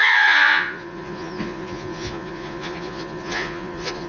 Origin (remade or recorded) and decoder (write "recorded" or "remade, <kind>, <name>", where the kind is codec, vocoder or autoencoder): remade, vocoder, Vocos